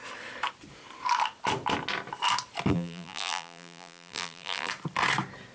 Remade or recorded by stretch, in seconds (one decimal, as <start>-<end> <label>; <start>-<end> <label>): 0.0-2.7 recorded; 2.7-4.7 remade; 4.7-5.5 recorded